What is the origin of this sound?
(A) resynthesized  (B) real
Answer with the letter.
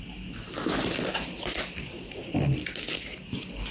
B